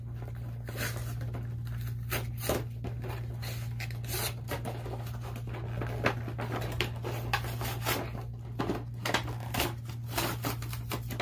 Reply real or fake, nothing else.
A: real